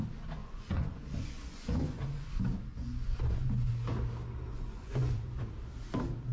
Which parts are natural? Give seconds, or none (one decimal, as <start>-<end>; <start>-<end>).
0.0-0.4; 2.3-2.7; 3.7-4.5; 5.4-6.3